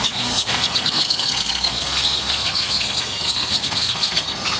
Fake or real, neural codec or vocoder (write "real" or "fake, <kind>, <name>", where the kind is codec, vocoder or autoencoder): fake, codec, SNAC